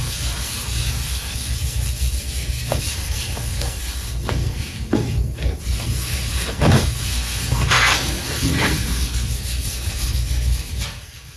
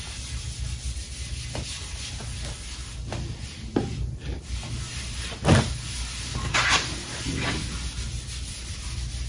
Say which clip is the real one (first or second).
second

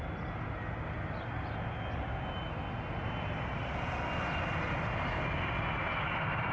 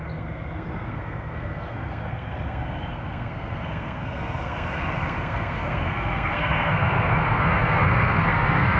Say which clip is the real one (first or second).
first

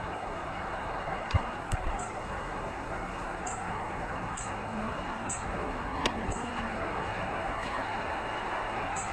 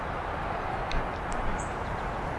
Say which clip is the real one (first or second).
second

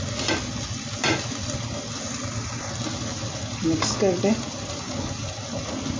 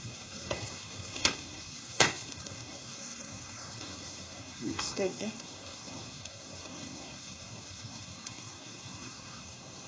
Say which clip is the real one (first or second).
first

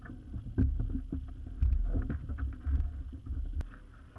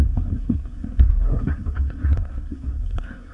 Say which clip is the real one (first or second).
first